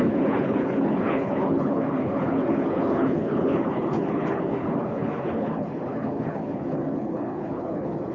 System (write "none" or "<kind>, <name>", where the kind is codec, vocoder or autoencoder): codec, HILCodec